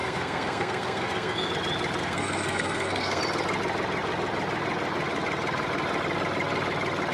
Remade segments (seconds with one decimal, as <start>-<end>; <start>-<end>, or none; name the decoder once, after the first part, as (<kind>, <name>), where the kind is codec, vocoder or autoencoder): 0.0-1.5 (codec, SNAC); 2.0-3.2